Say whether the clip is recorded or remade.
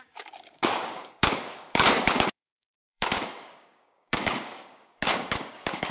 remade